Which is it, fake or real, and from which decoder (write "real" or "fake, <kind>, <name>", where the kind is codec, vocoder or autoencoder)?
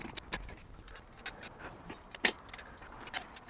real